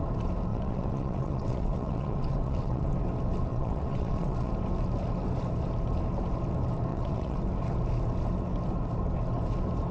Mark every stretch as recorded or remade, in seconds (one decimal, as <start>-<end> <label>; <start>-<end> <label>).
0.0-0.5 recorded; 0.5-2.9 remade; 2.9-3.5 recorded; 3.5-4.5 remade; 4.5-6.9 recorded; 6.9-7.4 remade; 7.4-9.9 recorded